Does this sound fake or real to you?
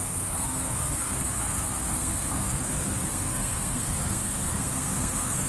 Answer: fake